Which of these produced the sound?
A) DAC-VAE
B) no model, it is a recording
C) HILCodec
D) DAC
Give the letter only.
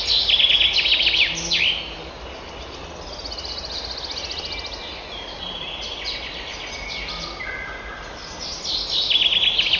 B